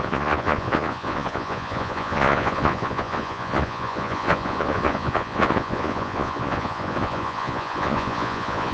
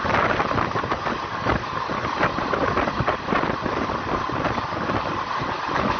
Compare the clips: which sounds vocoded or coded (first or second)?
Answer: first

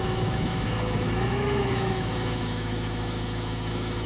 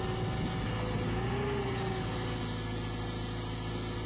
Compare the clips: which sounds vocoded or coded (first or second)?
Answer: first